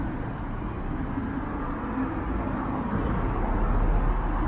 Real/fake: real